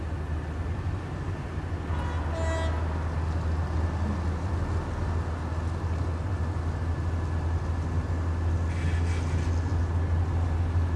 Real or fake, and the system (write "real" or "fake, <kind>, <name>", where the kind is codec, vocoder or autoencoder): real